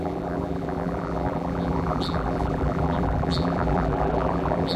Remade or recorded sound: remade